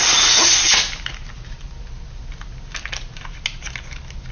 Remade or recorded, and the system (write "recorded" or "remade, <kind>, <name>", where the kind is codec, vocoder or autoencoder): recorded